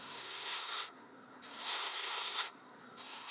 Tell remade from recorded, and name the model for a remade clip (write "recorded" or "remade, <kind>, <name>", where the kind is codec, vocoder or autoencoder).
remade, codec, SNAC